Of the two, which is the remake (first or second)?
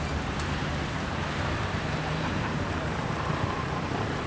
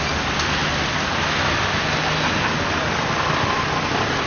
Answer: first